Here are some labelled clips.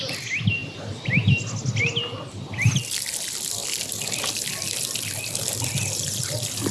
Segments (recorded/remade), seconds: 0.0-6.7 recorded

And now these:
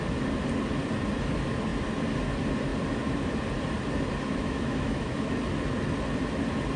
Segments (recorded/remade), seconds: 0.0-4.3 recorded; 4.3-5.3 remade; 5.3-6.8 recorded

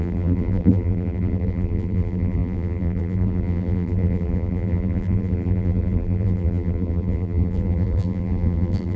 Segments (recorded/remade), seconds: 0.0-9.0 remade

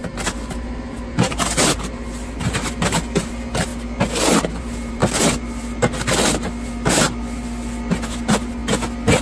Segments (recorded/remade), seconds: 0.0-3.7 remade; 3.7-4.6 recorded; 4.6-5.0 remade; 5.0-8.2 recorded; 8.2-8.6 remade; 8.6-9.2 recorded

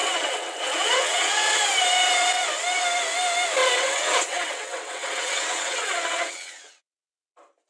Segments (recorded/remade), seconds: 0.0-1.6 remade; 1.6-3.6 recorded; 3.6-7.3 remade; 7.3-7.7 recorded